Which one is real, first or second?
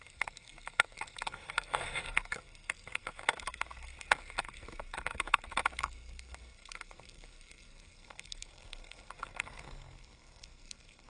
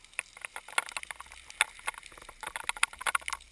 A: second